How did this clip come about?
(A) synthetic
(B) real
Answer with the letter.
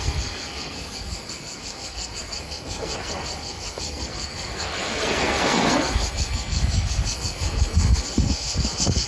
A